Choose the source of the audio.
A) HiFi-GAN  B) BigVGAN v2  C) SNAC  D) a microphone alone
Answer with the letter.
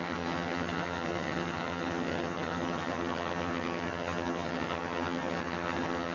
A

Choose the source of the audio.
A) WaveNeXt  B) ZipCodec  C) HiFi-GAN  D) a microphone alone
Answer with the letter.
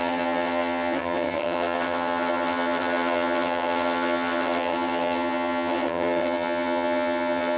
C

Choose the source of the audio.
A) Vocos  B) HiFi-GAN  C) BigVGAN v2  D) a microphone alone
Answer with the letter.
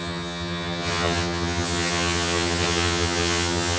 B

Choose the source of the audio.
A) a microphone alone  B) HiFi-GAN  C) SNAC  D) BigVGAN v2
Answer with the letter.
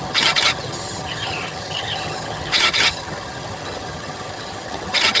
B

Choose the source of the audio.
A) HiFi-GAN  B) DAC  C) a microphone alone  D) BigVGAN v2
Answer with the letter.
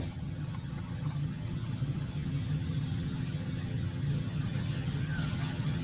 A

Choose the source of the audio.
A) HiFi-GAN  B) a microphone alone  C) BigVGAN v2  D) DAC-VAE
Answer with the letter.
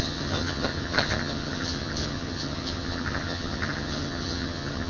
A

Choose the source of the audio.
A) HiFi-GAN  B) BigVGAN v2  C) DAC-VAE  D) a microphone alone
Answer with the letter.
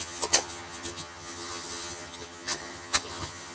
A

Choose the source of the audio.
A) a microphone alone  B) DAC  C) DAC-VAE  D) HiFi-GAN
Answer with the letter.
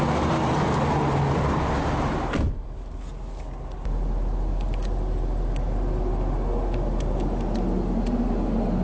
A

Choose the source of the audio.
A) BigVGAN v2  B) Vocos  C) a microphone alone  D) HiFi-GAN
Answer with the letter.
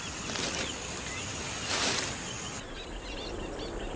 C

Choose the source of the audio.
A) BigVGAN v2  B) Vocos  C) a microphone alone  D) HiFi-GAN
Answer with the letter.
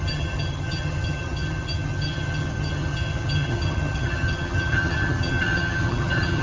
D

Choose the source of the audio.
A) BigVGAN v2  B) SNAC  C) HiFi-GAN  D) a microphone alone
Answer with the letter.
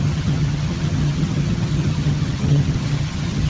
C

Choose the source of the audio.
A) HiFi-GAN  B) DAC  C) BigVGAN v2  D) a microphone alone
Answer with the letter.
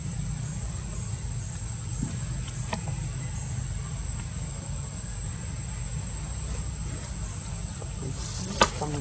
D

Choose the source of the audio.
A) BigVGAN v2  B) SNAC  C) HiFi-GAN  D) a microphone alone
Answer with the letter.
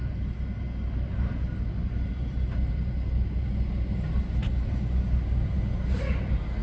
D